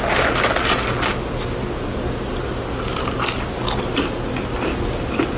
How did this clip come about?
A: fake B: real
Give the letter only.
B